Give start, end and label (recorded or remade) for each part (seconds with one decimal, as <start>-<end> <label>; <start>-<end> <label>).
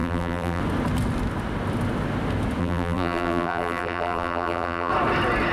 0.0-0.6 remade; 0.6-2.6 recorded; 2.6-4.9 remade; 4.9-5.5 recorded